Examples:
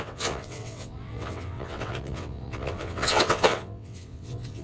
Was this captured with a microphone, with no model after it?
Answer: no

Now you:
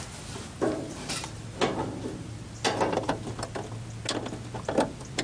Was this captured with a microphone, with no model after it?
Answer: yes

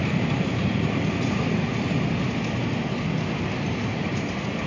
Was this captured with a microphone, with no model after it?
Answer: yes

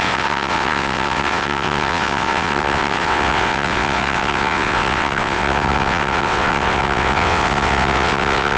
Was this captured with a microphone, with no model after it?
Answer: no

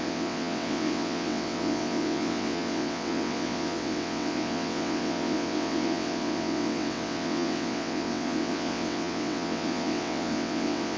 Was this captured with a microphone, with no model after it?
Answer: no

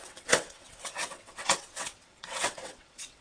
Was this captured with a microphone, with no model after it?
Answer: no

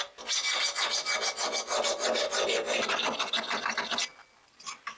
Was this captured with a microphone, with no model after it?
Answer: yes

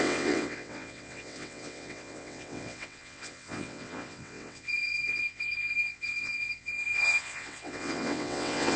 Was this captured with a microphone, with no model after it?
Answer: no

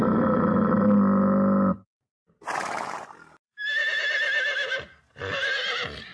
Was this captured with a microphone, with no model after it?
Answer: yes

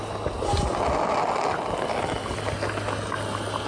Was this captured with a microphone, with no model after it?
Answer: yes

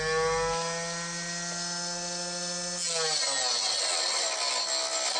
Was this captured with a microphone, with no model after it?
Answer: yes